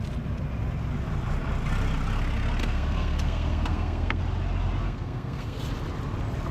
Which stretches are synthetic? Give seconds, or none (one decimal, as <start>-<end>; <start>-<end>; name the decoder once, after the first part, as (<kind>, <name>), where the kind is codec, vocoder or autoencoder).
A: 2.6-4.2 (codec, SNAC); 4.8-5.6

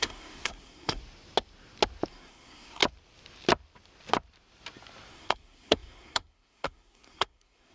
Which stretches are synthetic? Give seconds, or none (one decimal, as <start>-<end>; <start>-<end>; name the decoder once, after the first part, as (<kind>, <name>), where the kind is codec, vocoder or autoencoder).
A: 0.0-1.0 (codec, SNAC); 2.1-2.8; 5.1-7.7

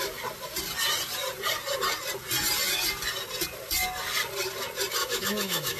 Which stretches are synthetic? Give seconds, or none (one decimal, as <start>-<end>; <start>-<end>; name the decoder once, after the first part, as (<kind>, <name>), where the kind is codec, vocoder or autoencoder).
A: 5.0-5.8 (autoencoder, DAC-VAE)